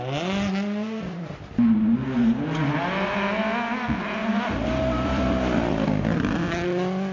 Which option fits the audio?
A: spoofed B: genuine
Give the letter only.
B